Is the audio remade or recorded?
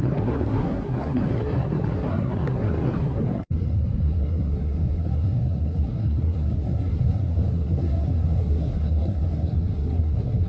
remade